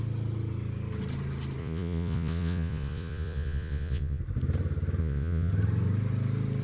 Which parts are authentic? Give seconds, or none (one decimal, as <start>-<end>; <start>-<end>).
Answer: 0.0-1.6; 4.2-5.0; 5.5-6.6